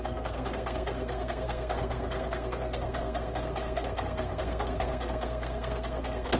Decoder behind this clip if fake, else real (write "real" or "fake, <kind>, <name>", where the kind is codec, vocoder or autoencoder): fake, codec, SNAC